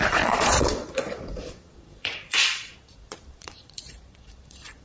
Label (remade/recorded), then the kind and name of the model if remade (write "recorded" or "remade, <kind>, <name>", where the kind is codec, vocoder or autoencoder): remade, vocoder, Vocos